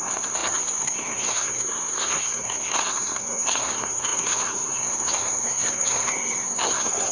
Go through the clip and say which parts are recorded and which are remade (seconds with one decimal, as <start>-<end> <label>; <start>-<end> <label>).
0.0-7.1 remade